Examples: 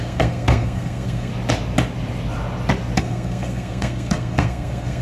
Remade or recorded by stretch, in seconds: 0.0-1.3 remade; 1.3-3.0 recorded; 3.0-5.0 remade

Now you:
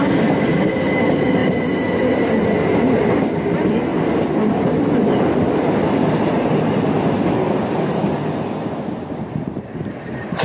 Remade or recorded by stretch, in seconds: 0.0-10.4 recorded

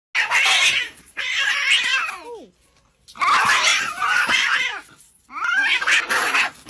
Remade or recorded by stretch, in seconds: 0.0-3.7 recorded; 3.7-4.6 remade; 4.6-6.7 recorded

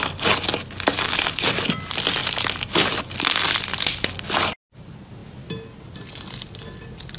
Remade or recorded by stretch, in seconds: 0.0-7.2 recorded